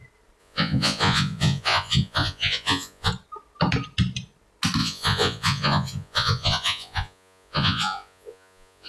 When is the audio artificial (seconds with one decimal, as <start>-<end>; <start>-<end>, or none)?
0.4-3.1; 4.8-8.9